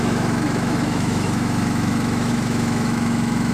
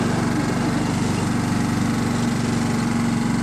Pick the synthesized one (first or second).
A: first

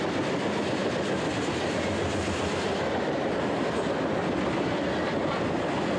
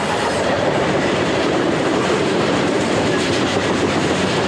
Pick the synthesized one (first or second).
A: second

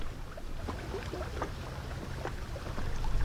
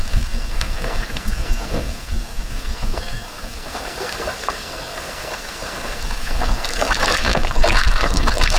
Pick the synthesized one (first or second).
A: second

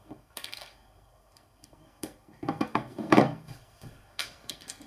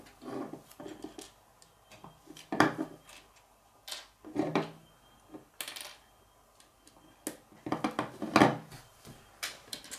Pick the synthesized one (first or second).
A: first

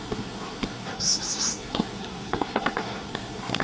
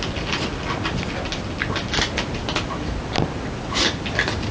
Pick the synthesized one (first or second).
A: first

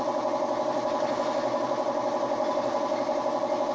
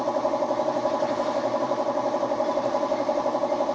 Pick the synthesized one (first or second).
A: second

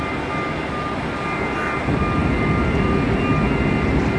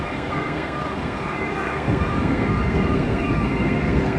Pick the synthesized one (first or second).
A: second